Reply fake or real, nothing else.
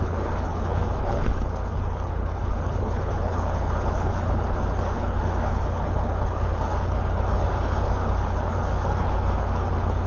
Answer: fake